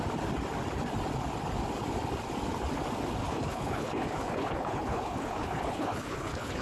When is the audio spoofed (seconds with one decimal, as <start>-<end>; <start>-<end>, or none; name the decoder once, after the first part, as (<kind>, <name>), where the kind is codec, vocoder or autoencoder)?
3.2-6.6 (codec, HILCodec)